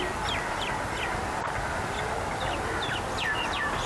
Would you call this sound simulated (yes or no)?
no